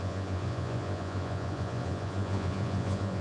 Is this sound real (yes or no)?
no